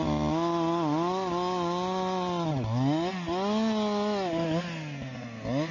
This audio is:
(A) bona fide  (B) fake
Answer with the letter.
A